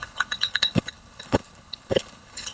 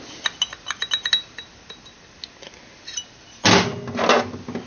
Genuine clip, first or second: second